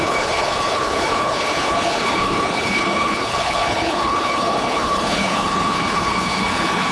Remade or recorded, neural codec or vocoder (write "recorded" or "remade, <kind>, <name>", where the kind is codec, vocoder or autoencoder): remade, codec, HILCodec